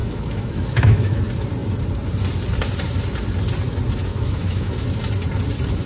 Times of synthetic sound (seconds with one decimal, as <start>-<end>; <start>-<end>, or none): 0.0-1.2; 4.1-4.7